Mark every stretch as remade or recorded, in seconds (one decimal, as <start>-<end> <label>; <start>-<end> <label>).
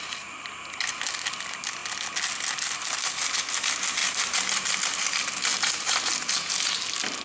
0.0-5.5 recorded; 5.5-6.1 remade; 6.1-7.2 recorded